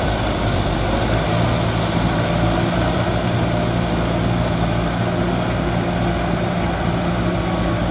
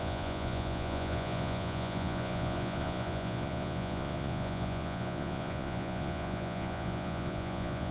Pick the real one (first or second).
first